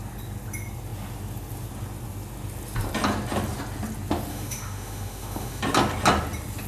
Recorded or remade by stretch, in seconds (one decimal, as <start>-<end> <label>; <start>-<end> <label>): 0.0-4.3 recorded; 4.3-5.6 remade; 5.6-6.7 recorded